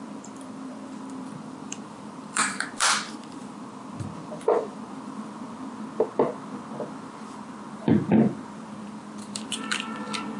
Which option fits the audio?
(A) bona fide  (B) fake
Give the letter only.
B